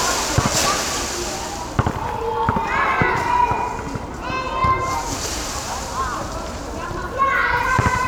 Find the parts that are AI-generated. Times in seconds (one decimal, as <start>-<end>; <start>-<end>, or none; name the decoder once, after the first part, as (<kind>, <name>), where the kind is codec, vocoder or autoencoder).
4.6-8.1 (vocoder, BigVGAN v2)